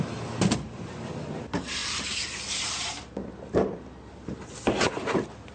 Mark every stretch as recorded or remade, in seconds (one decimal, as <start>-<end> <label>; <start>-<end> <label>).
0.0-1.8 recorded; 1.8-2.9 remade; 2.9-5.5 recorded